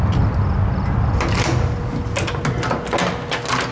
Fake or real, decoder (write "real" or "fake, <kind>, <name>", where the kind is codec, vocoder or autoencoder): real